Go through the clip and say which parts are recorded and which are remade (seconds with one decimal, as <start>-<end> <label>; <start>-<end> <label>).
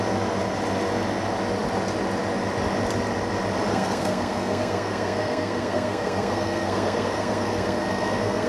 0.0-3.7 recorded; 3.7-8.5 remade